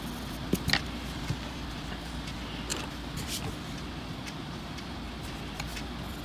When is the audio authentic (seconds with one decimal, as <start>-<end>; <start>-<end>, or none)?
0.0-2.7; 3.3-4.2; 5.1-6.2